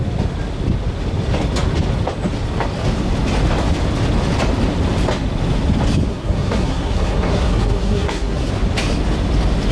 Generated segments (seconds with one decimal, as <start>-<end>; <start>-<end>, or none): 6.1-8.5